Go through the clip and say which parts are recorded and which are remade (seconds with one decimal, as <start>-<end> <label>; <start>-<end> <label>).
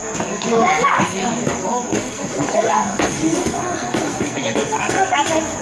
0.0-5.6 remade